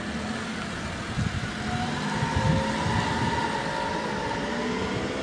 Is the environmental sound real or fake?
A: real